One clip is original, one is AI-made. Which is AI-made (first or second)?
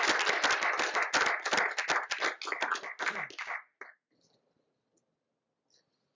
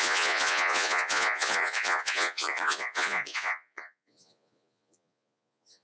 second